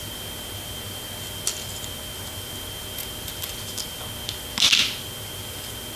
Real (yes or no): yes